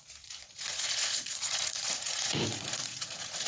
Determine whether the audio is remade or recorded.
remade